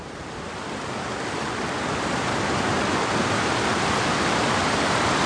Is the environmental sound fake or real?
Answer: real